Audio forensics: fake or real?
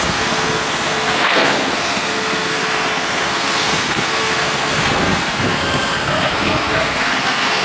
fake